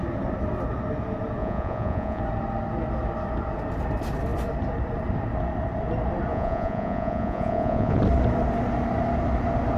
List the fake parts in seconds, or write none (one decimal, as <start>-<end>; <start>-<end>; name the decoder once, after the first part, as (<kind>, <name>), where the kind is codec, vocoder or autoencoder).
1.4-2.2 (vocoder, Vocos); 6.3-8.0